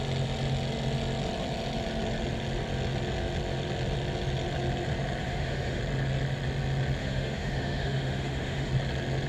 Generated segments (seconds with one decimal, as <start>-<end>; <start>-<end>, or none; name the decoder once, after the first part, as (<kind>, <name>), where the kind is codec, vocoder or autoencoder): 5.2-5.8 (autoencoder, DAC-VAE); 7.0-8.7